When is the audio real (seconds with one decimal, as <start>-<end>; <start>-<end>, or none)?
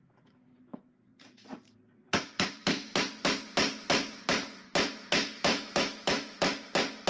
1.1-5.4; 6.4-7.1